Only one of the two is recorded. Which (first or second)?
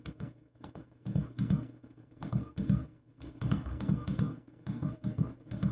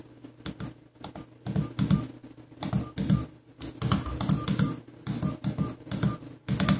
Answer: second